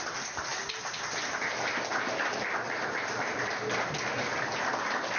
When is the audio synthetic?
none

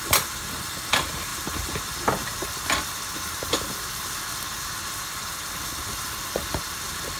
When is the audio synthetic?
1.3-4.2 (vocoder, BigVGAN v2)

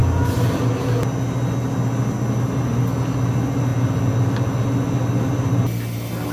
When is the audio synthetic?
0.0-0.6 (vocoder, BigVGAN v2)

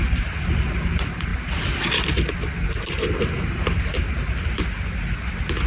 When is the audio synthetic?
1.3-1.8 (vocoder, BigVGAN v2)